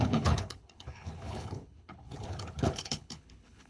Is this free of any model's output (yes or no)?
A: no